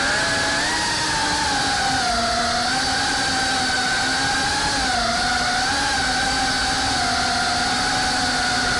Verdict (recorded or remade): recorded